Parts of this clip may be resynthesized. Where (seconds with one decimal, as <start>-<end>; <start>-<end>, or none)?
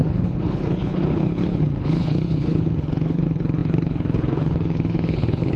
0.0-5.6